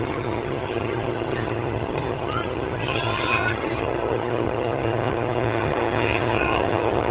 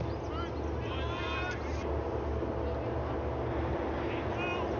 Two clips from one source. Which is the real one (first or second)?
second